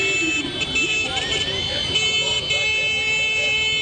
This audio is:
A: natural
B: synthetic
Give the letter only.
A